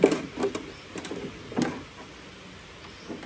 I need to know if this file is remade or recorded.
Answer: recorded